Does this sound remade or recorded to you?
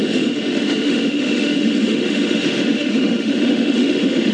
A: remade